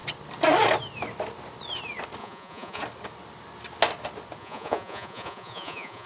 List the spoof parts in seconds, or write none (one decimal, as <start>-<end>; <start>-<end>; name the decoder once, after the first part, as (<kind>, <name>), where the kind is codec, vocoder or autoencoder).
2.2-2.8 (vocoder, Vocos); 4.4-6.1